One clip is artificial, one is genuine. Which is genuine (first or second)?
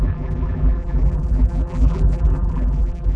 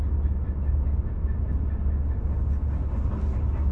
second